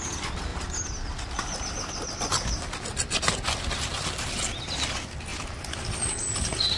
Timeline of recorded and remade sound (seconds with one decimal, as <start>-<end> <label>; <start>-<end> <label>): 0.0-6.8 recorded

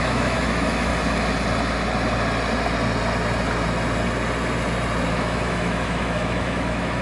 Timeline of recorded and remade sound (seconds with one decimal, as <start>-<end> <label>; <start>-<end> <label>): 0.0-0.9 remade; 0.9-5.1 recorded; 5.1-7.0 remade

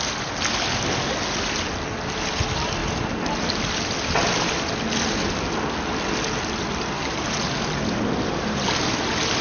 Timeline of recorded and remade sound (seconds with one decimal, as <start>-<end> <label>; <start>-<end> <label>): 0.0-9.4 recorded

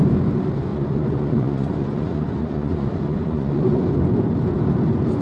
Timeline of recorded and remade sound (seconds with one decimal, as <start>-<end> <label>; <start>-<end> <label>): 0.0-0.7 recorded; 0.7-3.8 remade; 3.8-5.2 recorded

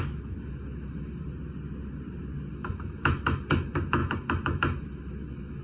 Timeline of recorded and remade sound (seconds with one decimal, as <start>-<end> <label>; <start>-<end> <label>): 0.0-1.2 remade; 1.2-2.5 recorded; 2.5-5.6 remade

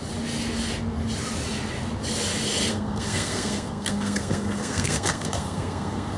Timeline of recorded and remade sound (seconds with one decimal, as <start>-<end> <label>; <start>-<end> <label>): 0.0-2.7 recorded; 2.7-6.2 remade

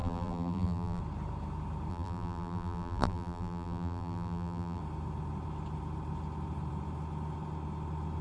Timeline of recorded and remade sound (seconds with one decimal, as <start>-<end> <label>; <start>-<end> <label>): 0.0-1.0 remade; 1.0-1.9 recorded; 1.9-4.8 remade; 4.8-8.2 recorded